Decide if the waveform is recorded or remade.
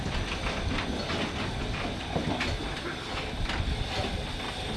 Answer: recorded